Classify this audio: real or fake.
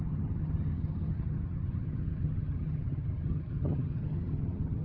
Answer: fake